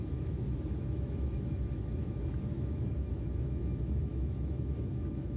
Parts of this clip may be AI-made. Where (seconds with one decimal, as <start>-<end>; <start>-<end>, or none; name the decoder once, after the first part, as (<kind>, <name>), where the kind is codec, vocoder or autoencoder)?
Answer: 0.0-5.4 (autoencoder, DAC-VAE)